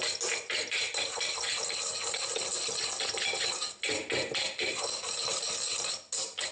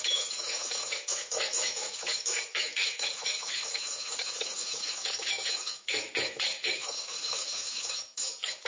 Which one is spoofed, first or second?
second